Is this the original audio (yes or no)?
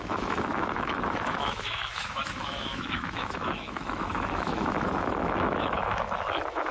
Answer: no